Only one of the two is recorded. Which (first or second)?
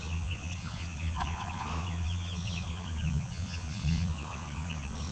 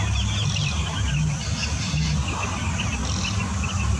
second